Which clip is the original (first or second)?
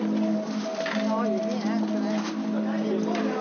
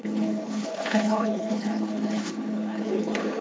first